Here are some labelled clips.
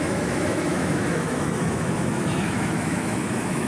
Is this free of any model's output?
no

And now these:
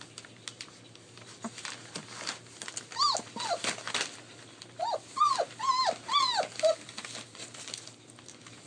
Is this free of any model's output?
yes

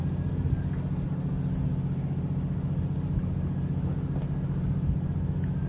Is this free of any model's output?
yes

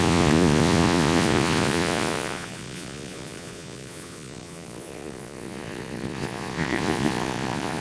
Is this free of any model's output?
no